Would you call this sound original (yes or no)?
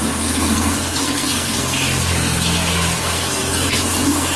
no